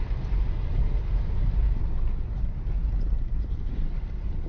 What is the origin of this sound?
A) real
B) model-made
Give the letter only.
A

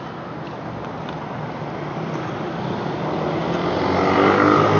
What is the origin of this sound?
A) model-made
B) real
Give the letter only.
B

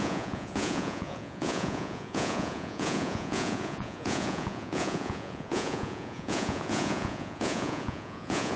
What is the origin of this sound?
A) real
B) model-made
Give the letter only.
B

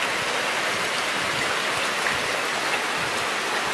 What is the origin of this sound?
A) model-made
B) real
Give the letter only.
B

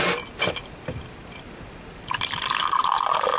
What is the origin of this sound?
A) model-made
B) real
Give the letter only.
B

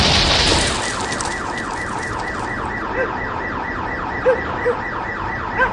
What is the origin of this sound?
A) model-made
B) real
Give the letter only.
B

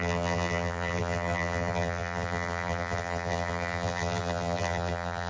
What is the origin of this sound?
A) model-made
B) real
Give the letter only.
A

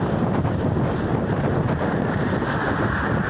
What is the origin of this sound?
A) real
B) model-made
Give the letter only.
A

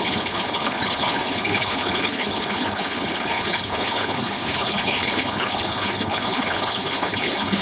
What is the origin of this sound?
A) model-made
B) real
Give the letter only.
A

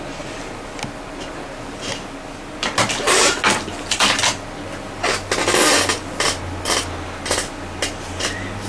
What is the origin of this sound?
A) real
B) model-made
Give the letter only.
A